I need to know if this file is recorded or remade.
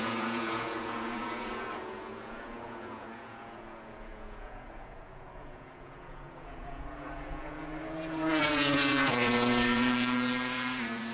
remade